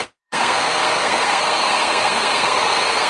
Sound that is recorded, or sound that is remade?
remade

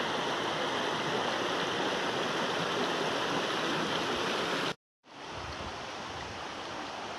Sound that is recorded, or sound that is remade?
recorded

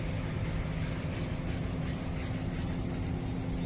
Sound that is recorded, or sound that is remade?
recorded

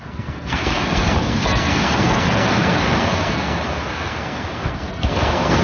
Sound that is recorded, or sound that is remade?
remade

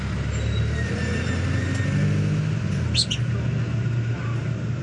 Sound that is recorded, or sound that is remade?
recorded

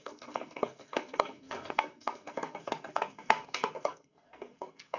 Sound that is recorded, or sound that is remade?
remade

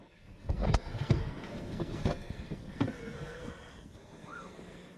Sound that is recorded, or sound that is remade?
remade